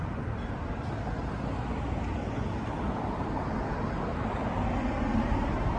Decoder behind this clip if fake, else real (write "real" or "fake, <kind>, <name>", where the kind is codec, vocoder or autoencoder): real